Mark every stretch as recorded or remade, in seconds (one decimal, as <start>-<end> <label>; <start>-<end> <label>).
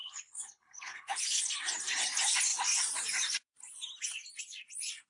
0.0-1.5 remade; 1.5-5.1 recorded